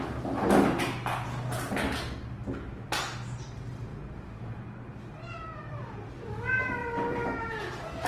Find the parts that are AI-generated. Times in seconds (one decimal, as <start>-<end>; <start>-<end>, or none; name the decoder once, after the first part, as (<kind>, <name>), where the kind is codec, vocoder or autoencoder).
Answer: 3.9-6.1 (vocoder, BigVGAN v2); 6.8-7.5